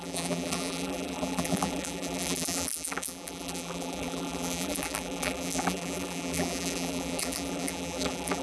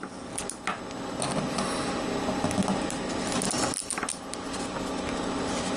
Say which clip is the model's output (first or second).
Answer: first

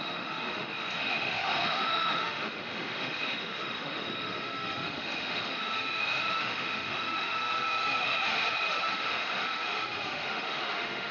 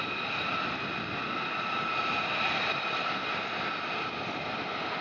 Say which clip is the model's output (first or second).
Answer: first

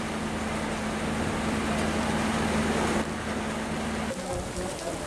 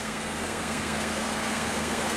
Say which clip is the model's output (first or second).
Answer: second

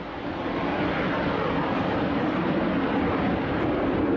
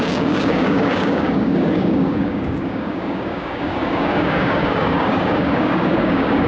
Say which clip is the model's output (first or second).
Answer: second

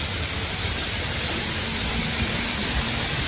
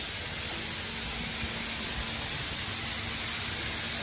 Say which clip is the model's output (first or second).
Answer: first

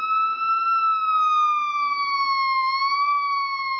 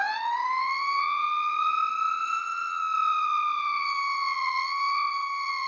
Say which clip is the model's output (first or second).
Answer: second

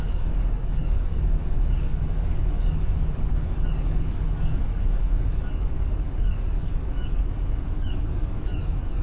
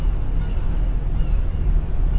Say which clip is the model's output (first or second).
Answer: first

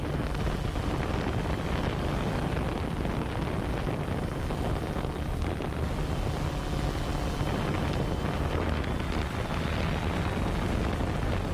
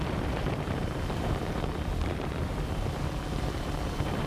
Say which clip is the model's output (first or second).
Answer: second